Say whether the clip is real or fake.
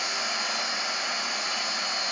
real